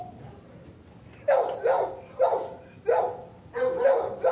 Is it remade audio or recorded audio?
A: recorded